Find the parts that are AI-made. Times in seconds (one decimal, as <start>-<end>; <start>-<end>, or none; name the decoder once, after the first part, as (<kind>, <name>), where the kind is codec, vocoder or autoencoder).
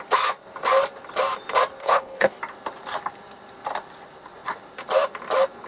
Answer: 1.8-2.4 (codec, HILCodec)